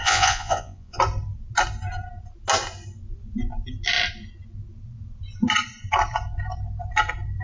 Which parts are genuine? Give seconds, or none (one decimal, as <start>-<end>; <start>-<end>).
1.0-7.4